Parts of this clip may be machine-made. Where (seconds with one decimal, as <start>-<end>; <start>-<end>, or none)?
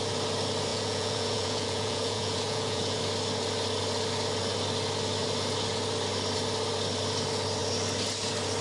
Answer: 0.7-3.0